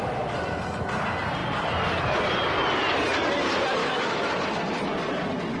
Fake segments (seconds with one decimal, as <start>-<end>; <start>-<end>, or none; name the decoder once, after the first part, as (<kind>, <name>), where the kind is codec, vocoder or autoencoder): 3.8-4.3 (autoencoder, DAC-VAE)